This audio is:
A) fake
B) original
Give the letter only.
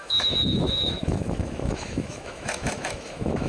A